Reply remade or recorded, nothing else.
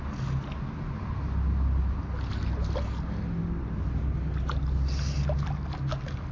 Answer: recorded